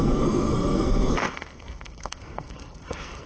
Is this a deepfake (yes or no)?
yes